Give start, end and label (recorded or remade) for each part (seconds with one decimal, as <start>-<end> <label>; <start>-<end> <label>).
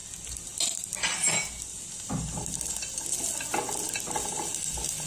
0.0-5.1 recorded